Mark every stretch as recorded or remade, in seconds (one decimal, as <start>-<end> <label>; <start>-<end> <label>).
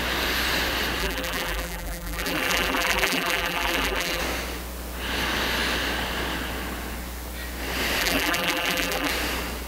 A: 0.0-1.0 recorded; 1.0-4.2 remade; 4.2-8.0 recorded; 8.0-9.1 remade; 9.1-9.7 recorded